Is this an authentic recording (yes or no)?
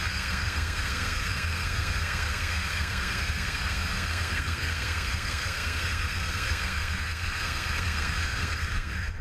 no